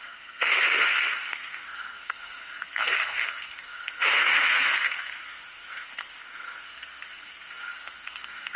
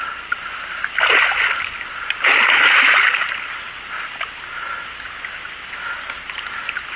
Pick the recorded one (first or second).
second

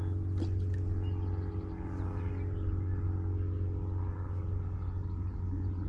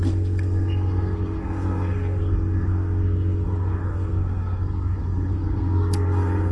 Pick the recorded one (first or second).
first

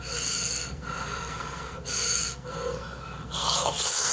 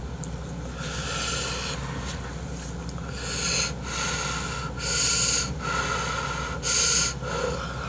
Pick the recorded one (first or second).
second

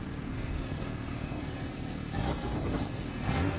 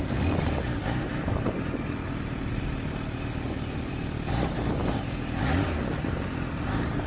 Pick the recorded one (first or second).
second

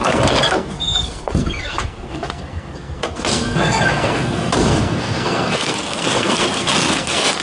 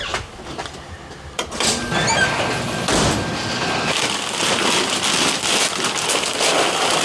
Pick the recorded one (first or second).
second